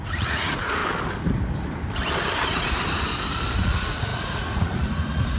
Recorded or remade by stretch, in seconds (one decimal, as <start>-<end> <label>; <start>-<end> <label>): 0.0-0.8 remade; 0.8-3.6 recorded; 3.6-5.4 remade